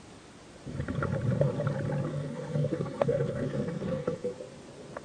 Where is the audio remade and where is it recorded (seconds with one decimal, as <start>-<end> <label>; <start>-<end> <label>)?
0.0-2.1 recorded; 2.1-4.3 remade; 4.3-5.0 recorded